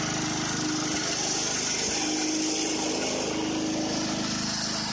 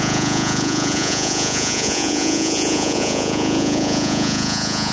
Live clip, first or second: first